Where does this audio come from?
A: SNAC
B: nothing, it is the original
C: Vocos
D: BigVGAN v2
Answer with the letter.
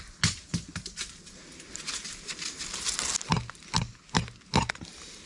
B